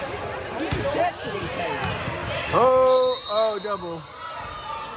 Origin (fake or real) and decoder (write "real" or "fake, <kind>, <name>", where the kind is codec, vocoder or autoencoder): real